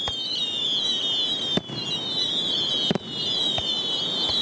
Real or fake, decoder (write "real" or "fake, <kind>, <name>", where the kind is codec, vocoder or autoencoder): real